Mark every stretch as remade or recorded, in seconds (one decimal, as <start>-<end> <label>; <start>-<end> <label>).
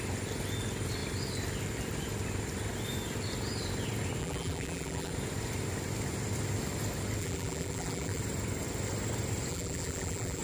0.0-4.2 recorded; 4.2-5.1 remade; 5.1-7.2 recorded; 7.2-8.2 remade; 8.2-9.5 recorded; 9.5-10.4 remade